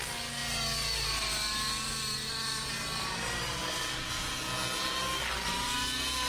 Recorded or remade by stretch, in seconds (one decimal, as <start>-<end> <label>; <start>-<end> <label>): 0.0-6.3 recorded